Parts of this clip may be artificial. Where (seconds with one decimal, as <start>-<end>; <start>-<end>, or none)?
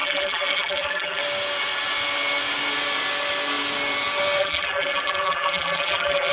0.0-1.2; 4.4-6.3